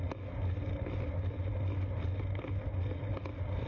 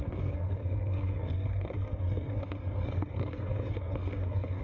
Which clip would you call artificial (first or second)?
second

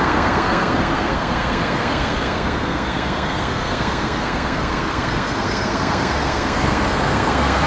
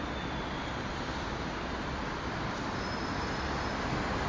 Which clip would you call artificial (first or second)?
first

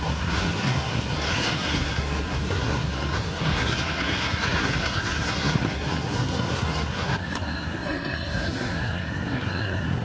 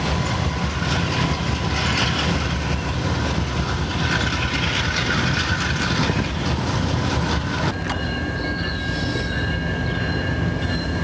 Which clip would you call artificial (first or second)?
first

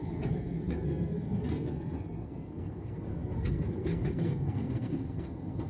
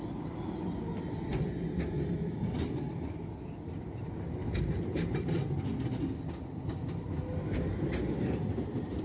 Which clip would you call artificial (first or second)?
first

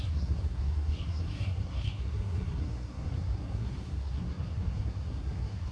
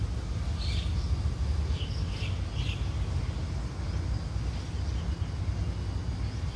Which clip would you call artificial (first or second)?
first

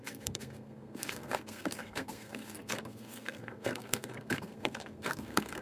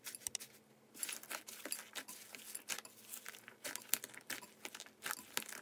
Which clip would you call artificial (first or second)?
first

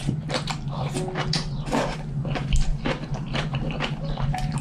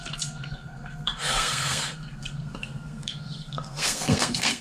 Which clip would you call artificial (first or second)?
second